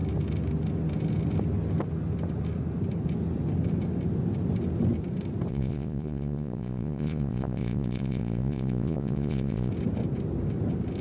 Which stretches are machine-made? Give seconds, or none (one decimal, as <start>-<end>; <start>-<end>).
5.5-9.7